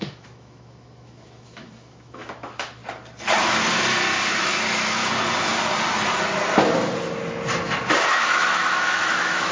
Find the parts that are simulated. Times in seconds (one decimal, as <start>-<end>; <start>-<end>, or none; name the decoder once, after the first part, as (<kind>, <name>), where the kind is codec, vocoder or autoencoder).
0.0-2.8 (autoencoder, DAC-VAE); 4.4-5.0; 8.1-9.5